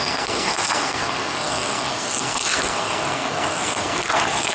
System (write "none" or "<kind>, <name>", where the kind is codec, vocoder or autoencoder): codec, SNAC